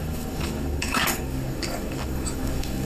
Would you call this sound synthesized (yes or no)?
yes